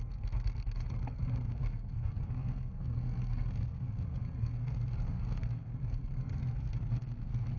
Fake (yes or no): yes